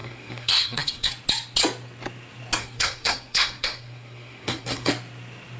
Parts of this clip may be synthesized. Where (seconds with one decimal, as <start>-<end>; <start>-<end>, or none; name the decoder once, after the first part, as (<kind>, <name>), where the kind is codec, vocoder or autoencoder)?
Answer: 0.0-1.1 (codec, SNAC); 2.6-4.9